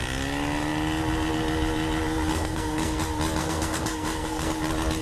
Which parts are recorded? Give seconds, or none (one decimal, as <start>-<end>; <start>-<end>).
0.0-2.3; 3.0-3.4; 4.5-5.0